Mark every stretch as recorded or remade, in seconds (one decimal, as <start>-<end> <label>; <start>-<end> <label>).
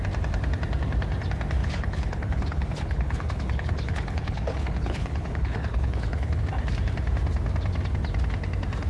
0.0-1.6 recorded; 1.6-6.4 remade; 6.4-8.9 recorded